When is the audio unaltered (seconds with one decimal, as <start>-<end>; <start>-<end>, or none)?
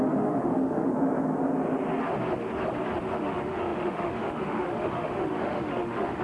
0.9-3.1